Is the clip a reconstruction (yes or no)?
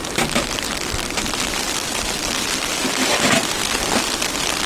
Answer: no